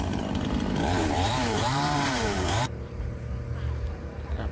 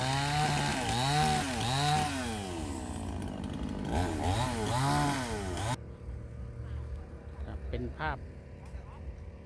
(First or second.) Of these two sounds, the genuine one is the second